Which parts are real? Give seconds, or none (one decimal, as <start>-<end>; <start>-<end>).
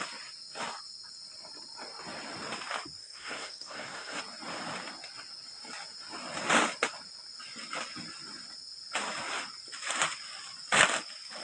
0.0-3.0; 4.2-11.4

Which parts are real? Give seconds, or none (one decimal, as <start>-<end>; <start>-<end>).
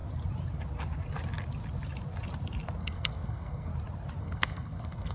0.0-2.8; 3.7-4.2